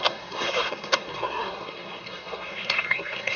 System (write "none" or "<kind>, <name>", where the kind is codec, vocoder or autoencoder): codec, SNAC